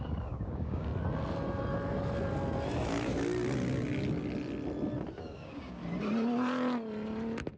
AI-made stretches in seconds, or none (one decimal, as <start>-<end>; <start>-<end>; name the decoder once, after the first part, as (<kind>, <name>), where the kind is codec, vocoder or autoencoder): 0.0-0.9 (codec, DAC); 5.2-5.8